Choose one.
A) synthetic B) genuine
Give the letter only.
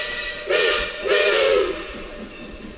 A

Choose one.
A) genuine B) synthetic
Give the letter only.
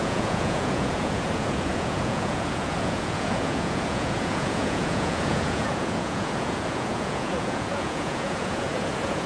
B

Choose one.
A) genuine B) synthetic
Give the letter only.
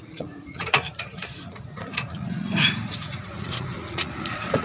B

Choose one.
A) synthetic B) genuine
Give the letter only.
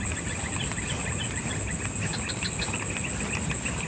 B